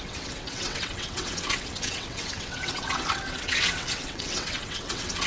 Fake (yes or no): yes